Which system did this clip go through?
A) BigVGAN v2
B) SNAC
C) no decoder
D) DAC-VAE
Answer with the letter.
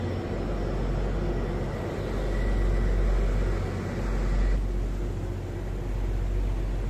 C